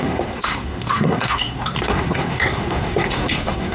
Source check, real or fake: fake